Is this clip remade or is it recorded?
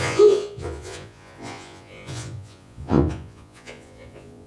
remade